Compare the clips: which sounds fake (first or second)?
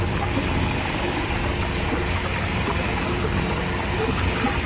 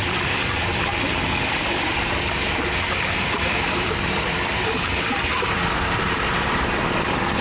second